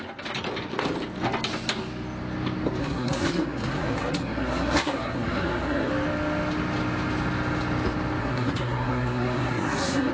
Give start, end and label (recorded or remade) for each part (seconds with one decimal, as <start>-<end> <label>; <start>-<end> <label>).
0.0-2.8 recorded; 2.8-5.9 remade; 5.9-8.2 recorded; 8.2-10.1 remade